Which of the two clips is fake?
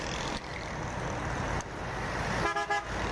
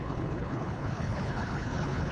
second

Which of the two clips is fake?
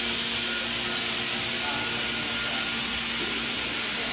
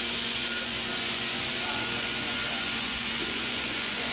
second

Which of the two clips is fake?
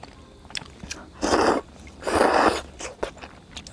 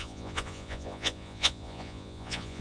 second